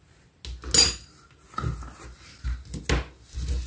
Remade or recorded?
recorded